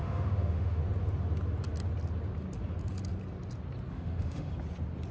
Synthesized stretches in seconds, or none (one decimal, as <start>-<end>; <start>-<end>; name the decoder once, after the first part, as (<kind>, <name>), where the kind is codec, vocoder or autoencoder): 0.0-0.8 (autoencoder, DAC-VAE); 3.9-4.5